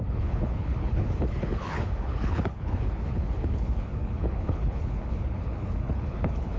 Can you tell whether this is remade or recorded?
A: remade